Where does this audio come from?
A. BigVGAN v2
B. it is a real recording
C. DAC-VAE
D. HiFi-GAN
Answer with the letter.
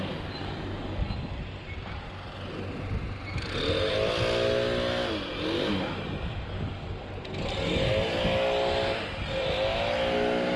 B